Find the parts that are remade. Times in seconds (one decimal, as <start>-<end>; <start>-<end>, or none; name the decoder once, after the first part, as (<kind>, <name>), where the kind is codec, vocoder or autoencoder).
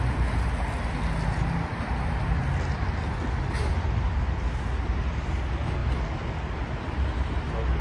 none